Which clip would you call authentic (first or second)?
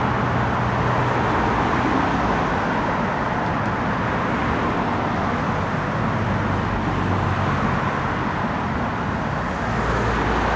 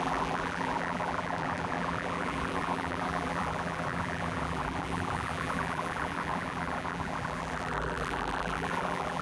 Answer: first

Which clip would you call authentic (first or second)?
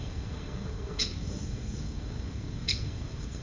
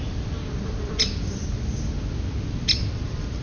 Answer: second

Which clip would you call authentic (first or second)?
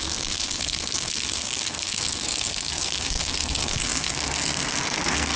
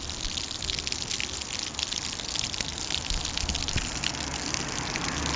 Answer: second